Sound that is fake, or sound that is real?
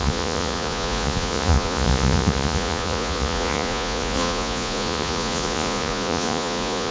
fake